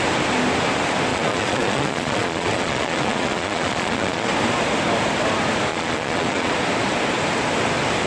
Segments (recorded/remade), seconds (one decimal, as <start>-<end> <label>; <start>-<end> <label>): 0.0-1.1 recorded; 1.1-4.3 remade; 4.3-5.7 recorded; 5.7-6.5 remade; 6.5-8.1 recorded